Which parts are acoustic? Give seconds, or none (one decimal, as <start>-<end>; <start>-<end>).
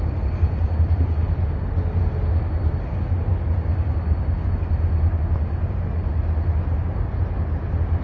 0.0-8.0